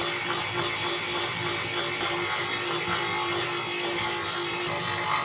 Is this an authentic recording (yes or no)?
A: yes